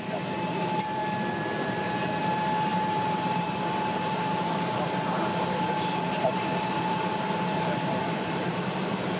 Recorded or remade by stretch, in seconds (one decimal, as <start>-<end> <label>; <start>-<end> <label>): 0.0-1.0 remade; 1.0-2.2 recorded; 2.2-9.2 remade